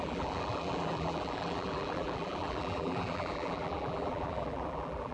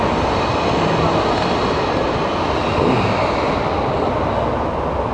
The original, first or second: second